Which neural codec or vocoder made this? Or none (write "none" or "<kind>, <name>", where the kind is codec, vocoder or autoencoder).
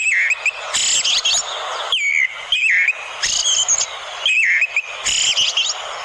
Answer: none